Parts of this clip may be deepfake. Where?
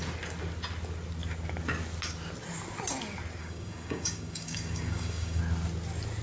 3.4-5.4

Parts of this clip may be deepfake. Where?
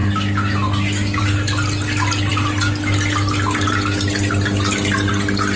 none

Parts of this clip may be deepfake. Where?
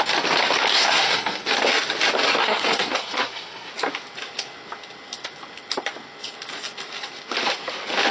0.7-1.5; 2.4-3.7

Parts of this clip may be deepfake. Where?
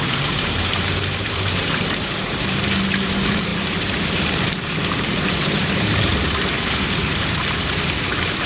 0.0-8.5